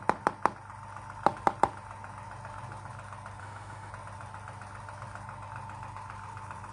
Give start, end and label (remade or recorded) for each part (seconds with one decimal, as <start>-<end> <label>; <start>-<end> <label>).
0.0-3.4 recorded; 3.4-3.9 remade; 3.9-6.7 recorded